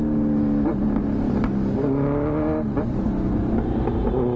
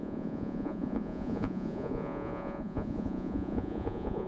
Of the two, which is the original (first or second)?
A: first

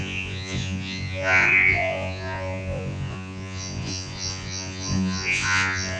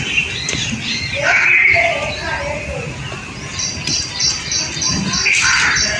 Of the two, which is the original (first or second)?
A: second